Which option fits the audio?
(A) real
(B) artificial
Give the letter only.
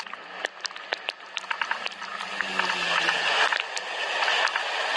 A